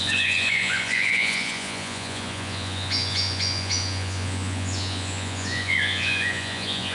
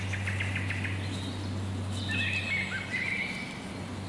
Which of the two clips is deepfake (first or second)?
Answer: first